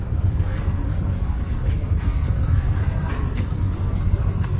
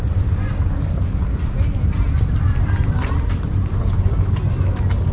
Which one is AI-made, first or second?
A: first